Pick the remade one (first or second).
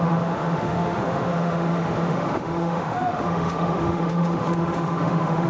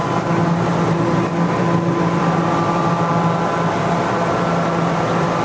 first